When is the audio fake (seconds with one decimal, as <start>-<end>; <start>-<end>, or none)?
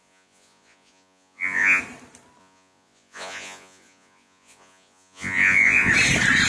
0.0-1.8; 2.4-5.9